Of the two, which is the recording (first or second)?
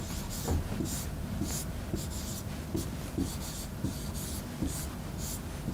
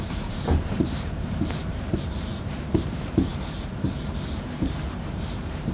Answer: first